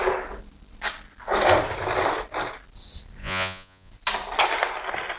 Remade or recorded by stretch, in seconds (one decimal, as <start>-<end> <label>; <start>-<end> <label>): 0.0-3.2 recorded; 3.2-3.9 remade; 3.9-5.2 recorded